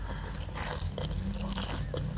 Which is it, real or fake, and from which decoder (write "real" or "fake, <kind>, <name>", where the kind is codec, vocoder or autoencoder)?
real